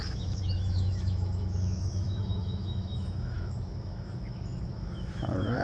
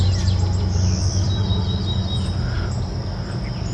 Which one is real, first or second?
second